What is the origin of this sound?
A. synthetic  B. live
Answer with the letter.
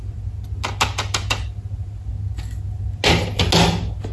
B